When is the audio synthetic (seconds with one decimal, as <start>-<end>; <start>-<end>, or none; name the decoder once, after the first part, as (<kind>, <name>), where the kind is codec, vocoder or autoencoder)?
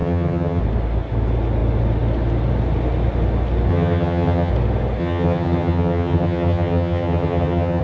0.0-0.6 (vocoder, HiFi-GAN); 3.7-4.5; 5.0-7.8